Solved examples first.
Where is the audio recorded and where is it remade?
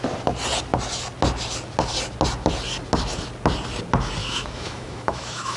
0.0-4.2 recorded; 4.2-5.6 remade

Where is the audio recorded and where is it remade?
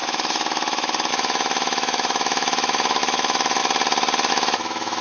0.0-3.6 remade; 3.6-4.3 recorded; 4.3-5.0 remade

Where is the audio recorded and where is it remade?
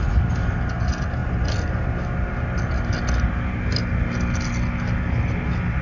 0.0-5.8 recorded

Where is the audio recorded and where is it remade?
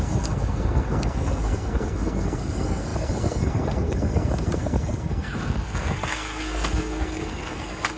0.0-8.0 remade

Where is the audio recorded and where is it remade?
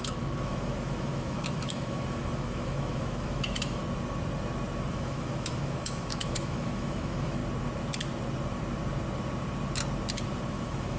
0.0-3.8 remade; 3.8-4.9 recorded; 4.9-7.4 remade; 7.4-10.5 recorded; 10.5-11.0 remade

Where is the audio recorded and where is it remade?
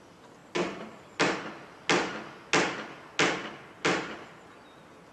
0.0-5.1 recorded